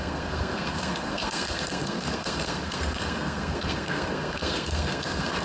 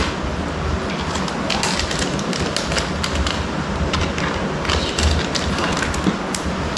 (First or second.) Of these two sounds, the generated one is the first